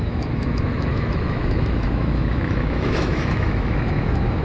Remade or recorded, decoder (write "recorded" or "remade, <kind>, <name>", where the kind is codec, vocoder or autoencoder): remade, autoencoder, DAC-VAE